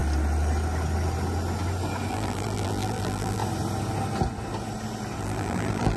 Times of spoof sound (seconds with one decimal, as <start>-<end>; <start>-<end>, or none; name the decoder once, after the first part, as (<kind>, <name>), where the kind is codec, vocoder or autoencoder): 2.1-3.4 (vocoder, BigVGAN v2); 5.2-6.0